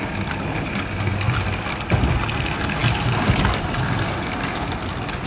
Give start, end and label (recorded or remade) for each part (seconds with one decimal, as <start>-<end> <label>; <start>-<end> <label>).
0.0-2.8 recorded; 2.8-4.1 remade; 4.1-5.3 recorded